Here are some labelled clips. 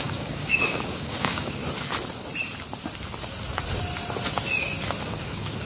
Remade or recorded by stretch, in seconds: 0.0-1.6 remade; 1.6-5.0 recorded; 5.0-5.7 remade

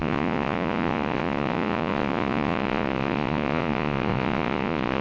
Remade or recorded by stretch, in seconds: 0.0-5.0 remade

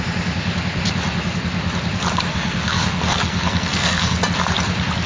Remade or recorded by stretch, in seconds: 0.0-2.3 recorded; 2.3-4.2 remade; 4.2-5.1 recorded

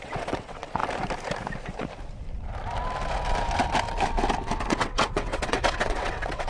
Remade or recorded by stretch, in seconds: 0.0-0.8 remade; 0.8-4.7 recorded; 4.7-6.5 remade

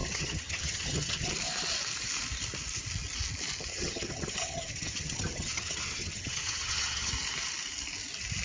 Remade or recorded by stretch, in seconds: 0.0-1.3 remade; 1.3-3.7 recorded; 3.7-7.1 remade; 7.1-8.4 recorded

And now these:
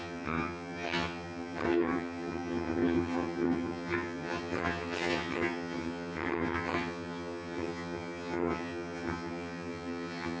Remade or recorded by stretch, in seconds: 0.0-10.4 remade

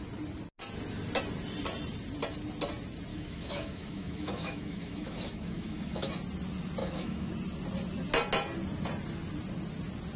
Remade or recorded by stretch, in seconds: 0.0-3.1 recorded; 3.1-6.1 remade; 6.1-6.8 recorded; 6.8-7.3 remade; 7.3-10.2 recorded